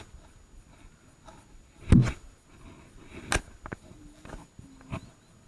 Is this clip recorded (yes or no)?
yes